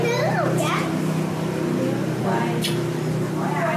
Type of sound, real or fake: real